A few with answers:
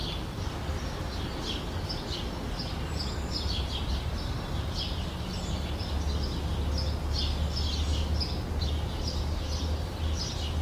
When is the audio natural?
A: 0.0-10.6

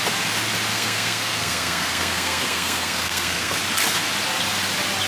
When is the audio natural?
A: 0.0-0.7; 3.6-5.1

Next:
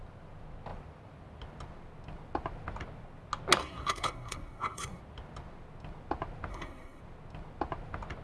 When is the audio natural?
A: 0.0-3.6; 5.0-6.5; 7.0-8.2

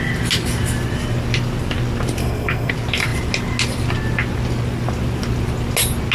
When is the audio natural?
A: 0.0-2.2; 2.7-6.1

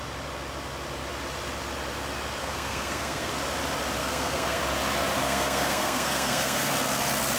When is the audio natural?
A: 0.0-2.4; 3.3-4.0; 4.6-5.2; 6.7-7.4